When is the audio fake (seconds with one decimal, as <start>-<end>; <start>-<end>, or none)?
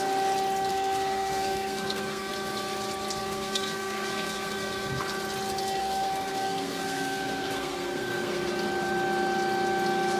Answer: 0.7-2.3; 3.2-5.0; 5.8-8.5